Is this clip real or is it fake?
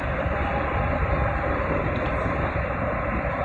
fake